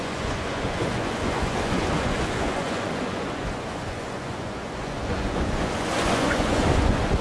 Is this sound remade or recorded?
remade